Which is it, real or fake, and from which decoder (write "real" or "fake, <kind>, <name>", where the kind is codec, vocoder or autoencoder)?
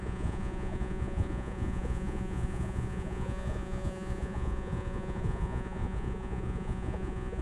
fake, vocoder, Vocos